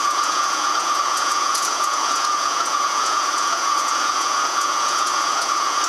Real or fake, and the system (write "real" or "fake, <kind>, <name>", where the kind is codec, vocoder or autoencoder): fake, vocoder, Vocos